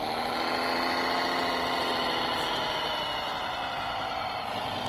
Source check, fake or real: real